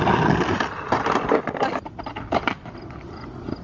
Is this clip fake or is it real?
fake